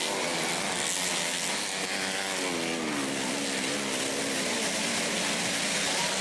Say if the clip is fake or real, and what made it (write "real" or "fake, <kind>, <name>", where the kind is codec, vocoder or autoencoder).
real